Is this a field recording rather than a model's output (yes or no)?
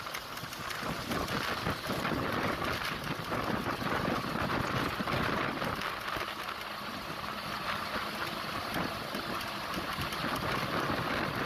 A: yes